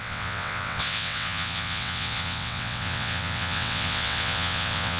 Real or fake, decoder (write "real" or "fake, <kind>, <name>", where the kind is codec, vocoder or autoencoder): fake, vocoder, WaveNeXt